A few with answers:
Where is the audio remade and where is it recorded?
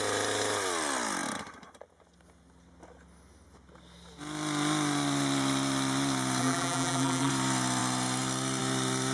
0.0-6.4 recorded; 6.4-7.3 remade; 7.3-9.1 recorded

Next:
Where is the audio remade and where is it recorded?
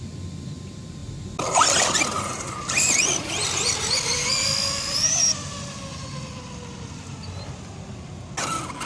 0.0-8.9 recorded